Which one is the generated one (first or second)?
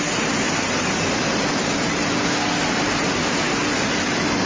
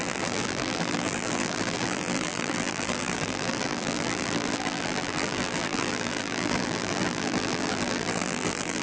second